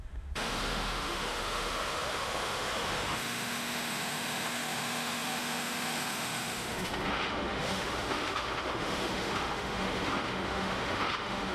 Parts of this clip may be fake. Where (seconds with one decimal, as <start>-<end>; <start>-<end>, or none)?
0.0-11.5